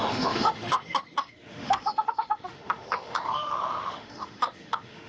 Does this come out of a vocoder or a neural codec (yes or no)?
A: yes